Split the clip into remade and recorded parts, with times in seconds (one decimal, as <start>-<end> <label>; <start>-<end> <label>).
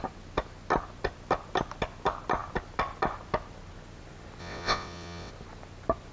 0.0-4.4 recorded; 4.4-5.3 remade; 5.3-6.1 recorded